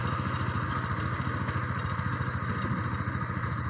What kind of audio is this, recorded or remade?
recorded